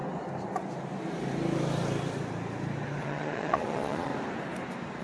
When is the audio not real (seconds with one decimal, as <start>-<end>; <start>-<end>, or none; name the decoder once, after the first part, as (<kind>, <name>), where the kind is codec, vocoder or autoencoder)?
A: 3.0-4.1 (vocoder, Vocos)